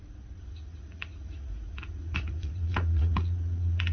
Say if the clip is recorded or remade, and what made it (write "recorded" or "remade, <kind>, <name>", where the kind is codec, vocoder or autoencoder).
remade, vocoder, Vocos